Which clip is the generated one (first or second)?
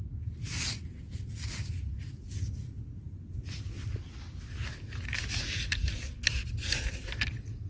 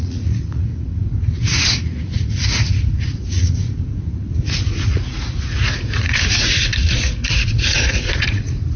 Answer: second